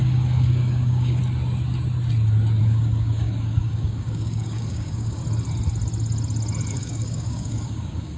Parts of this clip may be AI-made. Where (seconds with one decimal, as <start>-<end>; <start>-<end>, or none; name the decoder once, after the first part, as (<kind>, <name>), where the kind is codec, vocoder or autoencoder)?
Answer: 0.0-1.2 (codec, DAC); 2.6-5.2; 6.7-8.2